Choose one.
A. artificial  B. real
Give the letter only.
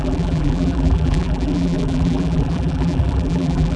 A